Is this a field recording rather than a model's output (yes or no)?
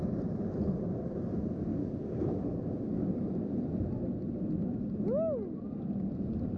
yes